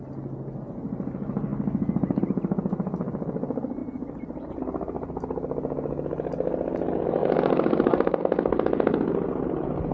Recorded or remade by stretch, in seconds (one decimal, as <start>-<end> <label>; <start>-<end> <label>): 0.0-3.8 recorded; 3.8-4.6 remade; 4.6-7.2 recorded; 7.2-8.2 remade; 8.2-9.9 recorded